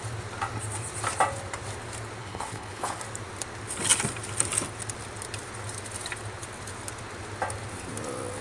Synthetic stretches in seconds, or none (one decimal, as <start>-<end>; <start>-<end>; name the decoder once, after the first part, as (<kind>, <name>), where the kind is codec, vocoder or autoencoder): 2.2-3.0 (codec, HILCodec)